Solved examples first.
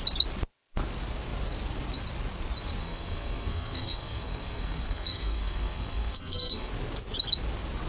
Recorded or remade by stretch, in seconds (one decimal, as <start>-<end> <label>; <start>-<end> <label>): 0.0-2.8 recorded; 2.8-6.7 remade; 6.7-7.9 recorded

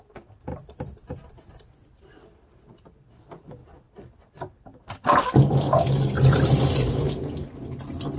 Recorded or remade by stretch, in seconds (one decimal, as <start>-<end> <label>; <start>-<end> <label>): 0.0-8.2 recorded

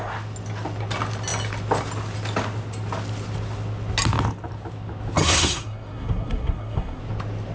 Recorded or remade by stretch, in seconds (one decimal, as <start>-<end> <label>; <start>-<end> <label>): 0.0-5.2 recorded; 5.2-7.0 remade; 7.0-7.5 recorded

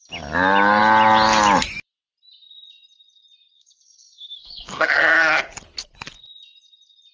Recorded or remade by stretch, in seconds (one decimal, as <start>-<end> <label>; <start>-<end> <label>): 0.0-3.5 recorded; 3.5-5.4 remade; 5.4-7.1 recorded